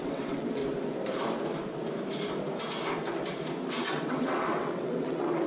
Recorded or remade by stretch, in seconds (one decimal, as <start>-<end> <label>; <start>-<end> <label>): 0.0-0.6 remade; 0.6-3.9 recorded; 3.9-5.5 remade